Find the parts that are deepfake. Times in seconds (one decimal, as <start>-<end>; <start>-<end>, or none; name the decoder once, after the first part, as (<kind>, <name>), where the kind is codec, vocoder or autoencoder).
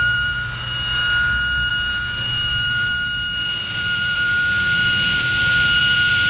0.0-1.0 (vocoder, BigVGAN v2); 1.7-2.9; 3.7-6.3